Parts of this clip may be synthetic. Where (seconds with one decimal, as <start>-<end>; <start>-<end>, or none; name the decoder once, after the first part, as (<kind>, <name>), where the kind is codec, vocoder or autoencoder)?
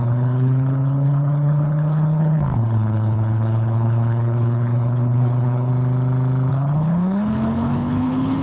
0.0-5.7 (codec, HILCodec); 6.5-8.4